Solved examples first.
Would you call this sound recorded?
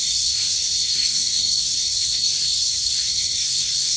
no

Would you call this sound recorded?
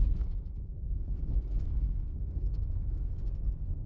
no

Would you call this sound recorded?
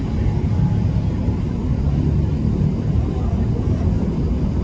yes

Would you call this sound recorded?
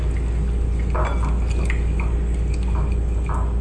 yes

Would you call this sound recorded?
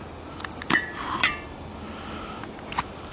no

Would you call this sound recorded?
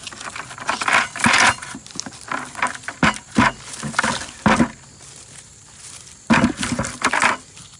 yes